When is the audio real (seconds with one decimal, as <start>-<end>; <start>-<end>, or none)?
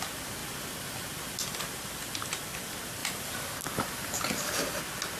0.0-3.0; 4.8-5.2